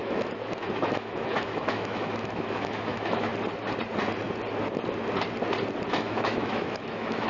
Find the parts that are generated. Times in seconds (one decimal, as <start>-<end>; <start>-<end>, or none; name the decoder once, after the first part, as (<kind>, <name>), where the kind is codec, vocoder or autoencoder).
0.0-3.3 (autoencoder, DAC-VAE); 5.9-7.3